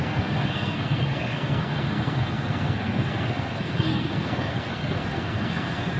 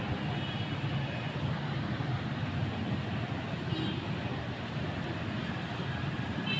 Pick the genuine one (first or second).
second